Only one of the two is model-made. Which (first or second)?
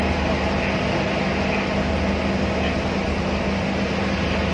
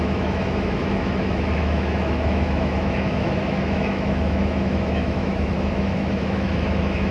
second